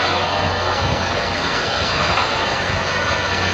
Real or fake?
fake